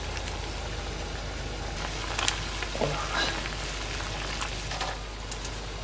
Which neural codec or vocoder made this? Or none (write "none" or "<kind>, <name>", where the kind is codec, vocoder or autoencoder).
none